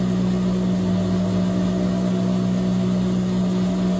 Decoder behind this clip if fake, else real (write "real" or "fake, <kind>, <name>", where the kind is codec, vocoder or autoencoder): real